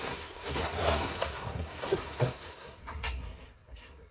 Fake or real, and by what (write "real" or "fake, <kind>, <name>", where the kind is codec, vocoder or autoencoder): fake, codec, SNAC